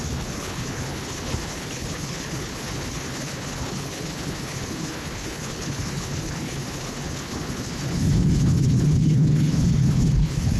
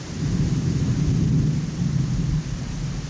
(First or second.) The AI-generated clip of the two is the first